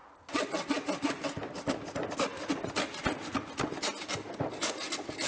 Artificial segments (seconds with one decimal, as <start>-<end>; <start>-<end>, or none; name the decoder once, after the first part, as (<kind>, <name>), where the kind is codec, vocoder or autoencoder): none

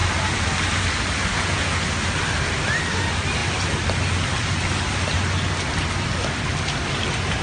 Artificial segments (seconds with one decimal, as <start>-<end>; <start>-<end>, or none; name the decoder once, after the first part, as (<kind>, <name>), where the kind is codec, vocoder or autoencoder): 1.3-1.8 (vocoder, Vocos)

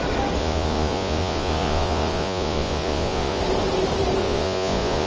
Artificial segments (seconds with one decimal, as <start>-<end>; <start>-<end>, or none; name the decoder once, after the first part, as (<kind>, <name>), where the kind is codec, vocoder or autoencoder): 0.4-3.4 (vocoder, Vocos); 4.2-5.1